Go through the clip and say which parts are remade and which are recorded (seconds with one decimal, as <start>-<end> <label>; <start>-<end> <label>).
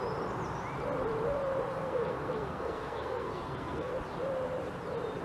0.0-1.7 recorded; 1.7-3.9 remade; 3.9-5.2 recorded